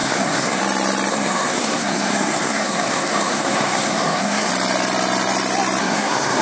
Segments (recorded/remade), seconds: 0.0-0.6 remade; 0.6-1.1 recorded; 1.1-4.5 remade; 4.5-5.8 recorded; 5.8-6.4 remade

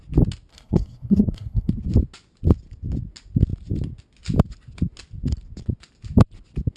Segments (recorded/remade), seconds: 0.0-0.5 recorded; 0.5-1.7 remade; 1.7-6.8 recorded

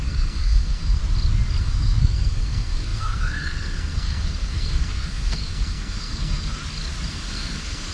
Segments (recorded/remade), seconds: 0.0-1.0 remade; 1.0-1.6 recorded; 1.6-6.6 remade; 6.6-7.1 recorded; 7.1-7.9 remade